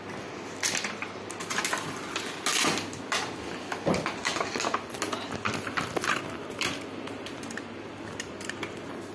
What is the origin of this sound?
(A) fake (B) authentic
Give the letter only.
B